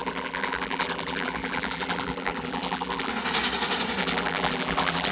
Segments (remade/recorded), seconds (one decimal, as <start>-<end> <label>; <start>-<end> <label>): 0.0-3.1 remade; 3.1-4.0 recorded; 4.0-5.1 remade